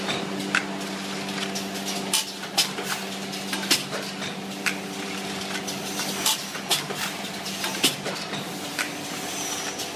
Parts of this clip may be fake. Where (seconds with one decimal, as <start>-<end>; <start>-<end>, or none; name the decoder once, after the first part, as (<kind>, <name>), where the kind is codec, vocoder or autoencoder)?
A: none